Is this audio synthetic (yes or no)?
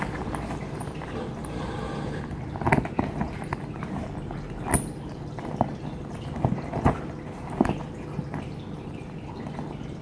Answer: no